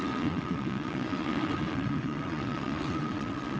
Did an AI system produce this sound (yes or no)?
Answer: yes